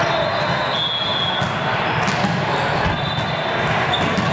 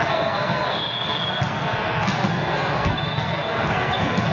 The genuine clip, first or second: first